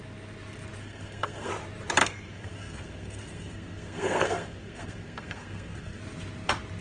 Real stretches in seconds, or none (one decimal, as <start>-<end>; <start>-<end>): 0.0-0.8; 1.5-2.0; 6.0-6.8